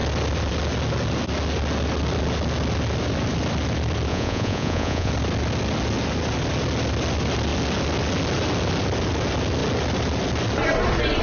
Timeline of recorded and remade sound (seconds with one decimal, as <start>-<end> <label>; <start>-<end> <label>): 0.0-4.1 recorded; 4.1-5.1 remade; 5.1-11.2 recorded